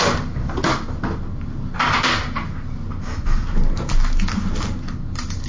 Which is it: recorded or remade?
recorded